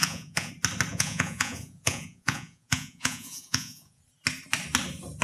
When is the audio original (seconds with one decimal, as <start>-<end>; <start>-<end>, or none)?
0.5-0.9; 4.0-5.2